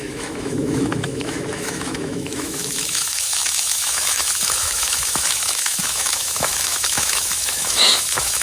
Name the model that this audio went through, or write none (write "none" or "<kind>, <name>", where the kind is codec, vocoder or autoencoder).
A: autoencoder, DAC-VAE